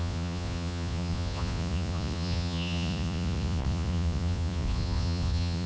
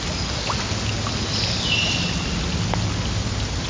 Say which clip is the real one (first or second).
second